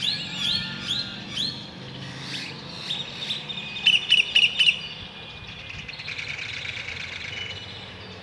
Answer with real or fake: real